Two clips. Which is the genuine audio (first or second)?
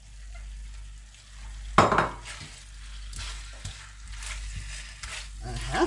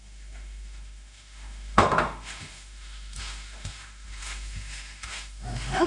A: first